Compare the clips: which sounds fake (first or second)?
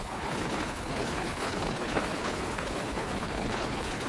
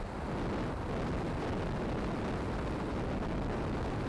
first